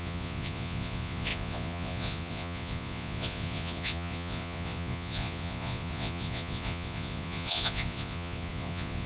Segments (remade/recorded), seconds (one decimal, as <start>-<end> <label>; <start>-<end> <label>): 0.0-9.1 remade